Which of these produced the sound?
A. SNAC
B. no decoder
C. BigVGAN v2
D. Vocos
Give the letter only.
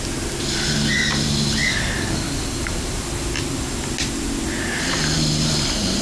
B